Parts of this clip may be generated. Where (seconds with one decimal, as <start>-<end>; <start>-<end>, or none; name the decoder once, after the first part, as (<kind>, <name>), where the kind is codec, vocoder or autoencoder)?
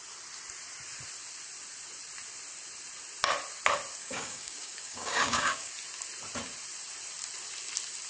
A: 4.0-5.7 (codec, DAC)